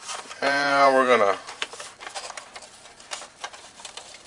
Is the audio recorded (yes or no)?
no